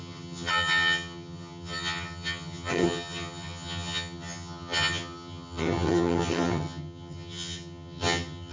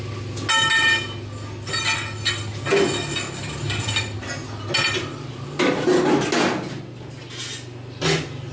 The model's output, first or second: first